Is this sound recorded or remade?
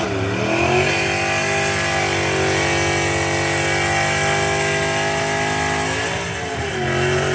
recorded